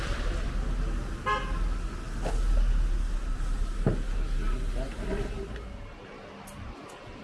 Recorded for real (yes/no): yes